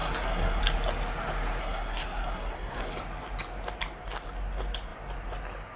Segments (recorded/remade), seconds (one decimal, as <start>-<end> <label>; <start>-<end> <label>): 0.0-0.6 remade; 0.6-1.6 recorded; 1.6-2.9 remade; 2.9-5.8 recorded